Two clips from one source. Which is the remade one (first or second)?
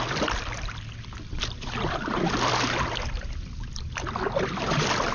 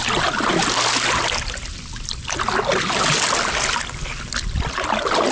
first